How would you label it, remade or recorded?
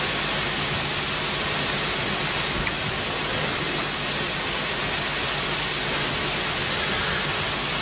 recorded